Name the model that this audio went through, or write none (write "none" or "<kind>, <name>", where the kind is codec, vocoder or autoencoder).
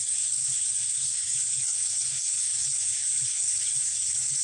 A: codec, HILCodec